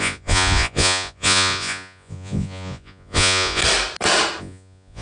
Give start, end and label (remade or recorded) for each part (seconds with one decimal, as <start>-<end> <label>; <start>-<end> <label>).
0.0-3.6 remade; 3.6-4.4 recorded; 4.4-5.0 remade